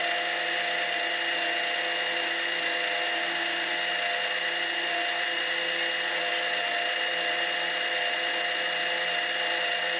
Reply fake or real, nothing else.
real